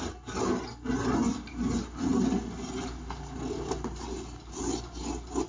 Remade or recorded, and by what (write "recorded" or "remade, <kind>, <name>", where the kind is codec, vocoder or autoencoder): recorded